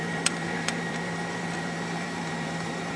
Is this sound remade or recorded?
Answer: remade